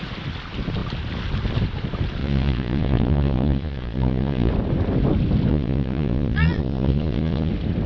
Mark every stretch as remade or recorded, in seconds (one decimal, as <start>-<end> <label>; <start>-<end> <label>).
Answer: 0.0-2.2 recorded; 2.2-4.5 remade; 4.5-5.5 recorded; 5.5-7.5 remade; 7.5-7.9 recorded